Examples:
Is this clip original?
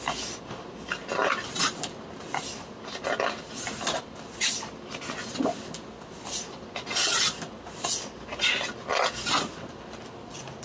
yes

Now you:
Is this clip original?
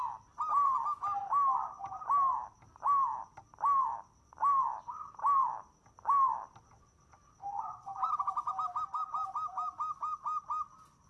yes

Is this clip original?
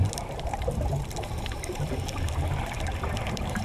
no